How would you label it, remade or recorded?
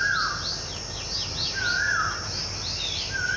recorded